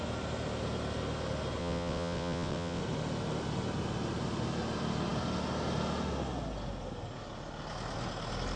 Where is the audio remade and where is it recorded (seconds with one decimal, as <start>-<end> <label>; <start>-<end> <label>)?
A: 0.0-1.6 recorded; 1.6-2.8 remade; 2.8-8.6 recorded